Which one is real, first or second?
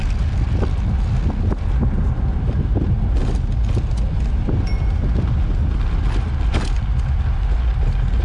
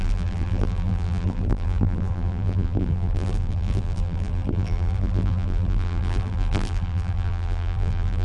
first